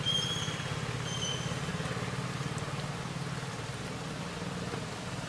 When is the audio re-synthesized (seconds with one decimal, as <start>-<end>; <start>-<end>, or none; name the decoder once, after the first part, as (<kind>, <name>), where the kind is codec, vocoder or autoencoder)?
none